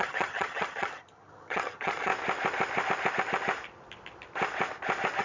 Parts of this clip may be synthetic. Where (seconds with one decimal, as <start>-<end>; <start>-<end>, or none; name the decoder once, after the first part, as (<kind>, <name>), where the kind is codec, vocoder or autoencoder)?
0.0-2.1 (vocoder, HiFi-GAN)